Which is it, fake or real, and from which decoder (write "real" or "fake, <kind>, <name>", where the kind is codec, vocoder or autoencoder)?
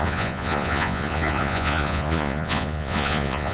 fake, vocoder, Vocos